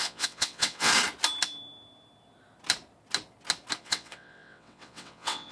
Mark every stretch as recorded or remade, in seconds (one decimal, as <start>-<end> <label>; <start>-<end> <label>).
0.0-0.9 remade; 0.9-3.8 recorded; 3.8-5.5 remade